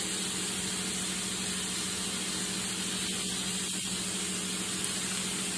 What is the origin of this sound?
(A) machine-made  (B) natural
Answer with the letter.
B